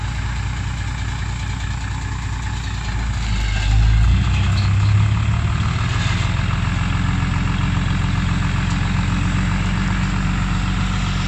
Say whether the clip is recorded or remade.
recorded